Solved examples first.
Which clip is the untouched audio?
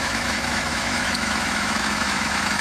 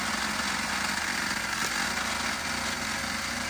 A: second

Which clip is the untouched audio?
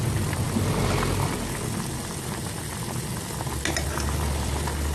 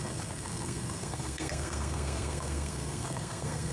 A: first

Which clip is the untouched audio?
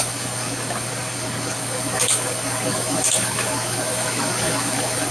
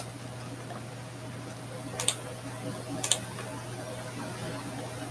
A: second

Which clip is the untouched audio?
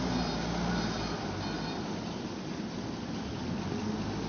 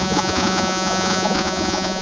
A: first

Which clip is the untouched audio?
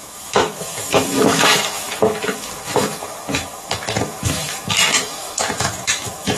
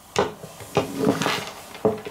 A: second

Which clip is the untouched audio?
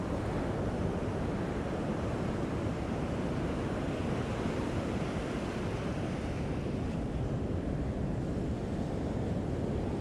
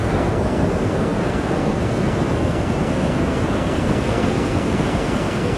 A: first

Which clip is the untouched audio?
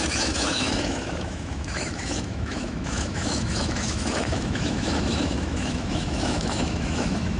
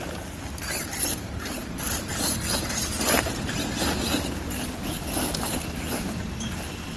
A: second